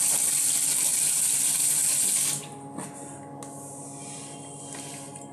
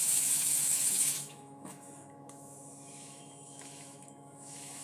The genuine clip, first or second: first